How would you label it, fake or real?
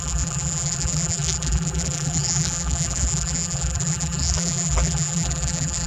fake